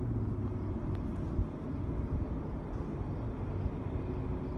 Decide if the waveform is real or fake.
real